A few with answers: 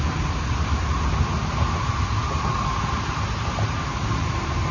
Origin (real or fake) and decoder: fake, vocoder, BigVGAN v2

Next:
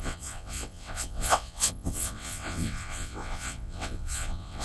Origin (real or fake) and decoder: fake, vocoder, WaveNeXt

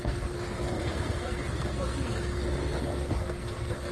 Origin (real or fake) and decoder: fake, codec, SNAC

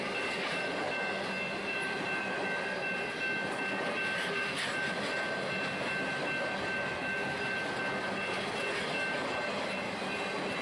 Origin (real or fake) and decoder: real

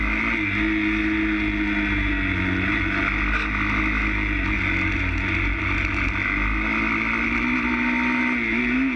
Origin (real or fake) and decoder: real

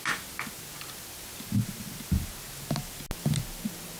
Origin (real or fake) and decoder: real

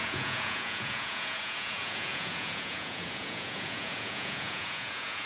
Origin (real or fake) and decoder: fake, vocoder, Vocos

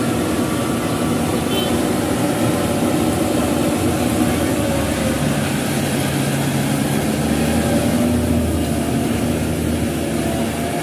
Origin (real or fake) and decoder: real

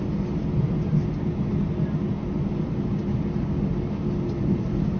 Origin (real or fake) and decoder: real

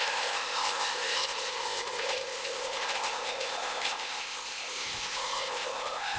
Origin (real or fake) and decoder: fake, codec, ZipCodec